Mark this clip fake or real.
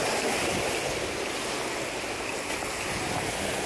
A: real